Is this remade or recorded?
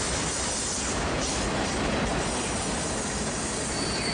recorded